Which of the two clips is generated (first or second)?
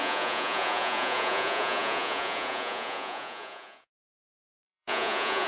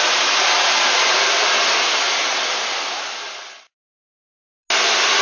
first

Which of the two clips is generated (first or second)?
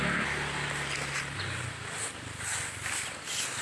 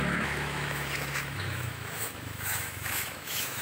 second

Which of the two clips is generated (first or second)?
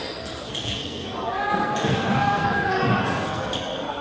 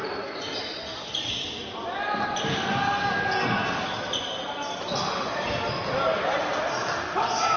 first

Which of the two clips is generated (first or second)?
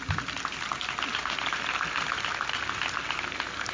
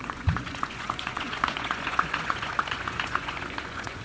second